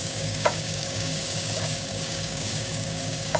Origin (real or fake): fake